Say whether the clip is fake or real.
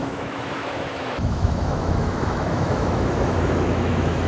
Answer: fake